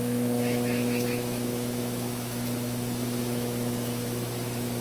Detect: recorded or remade remade